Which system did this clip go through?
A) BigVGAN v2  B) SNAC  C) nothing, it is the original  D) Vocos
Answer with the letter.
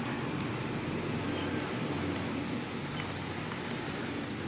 C